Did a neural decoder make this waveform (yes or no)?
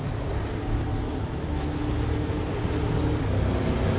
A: no